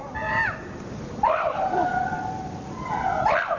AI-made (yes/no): no